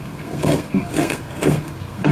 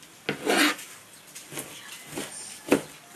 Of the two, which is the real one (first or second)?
second